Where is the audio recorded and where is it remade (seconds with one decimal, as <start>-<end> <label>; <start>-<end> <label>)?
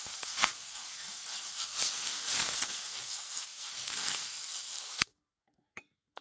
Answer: 0.0-6.2 remade